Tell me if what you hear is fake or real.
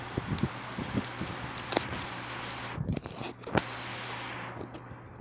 real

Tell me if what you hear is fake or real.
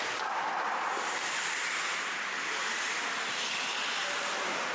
fake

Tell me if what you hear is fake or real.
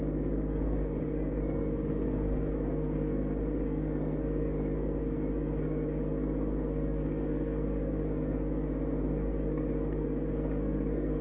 fake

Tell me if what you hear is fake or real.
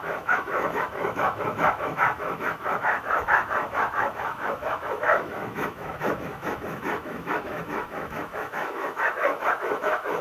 fake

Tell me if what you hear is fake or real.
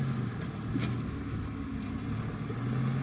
real